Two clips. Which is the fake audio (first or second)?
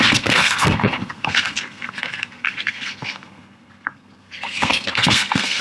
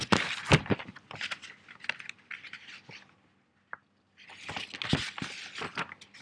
first